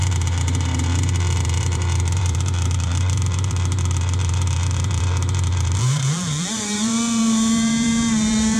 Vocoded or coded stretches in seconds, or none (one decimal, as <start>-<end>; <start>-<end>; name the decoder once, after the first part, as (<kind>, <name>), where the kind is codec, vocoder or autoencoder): 0.0-8.6 (vocoder, BigVGAN v2)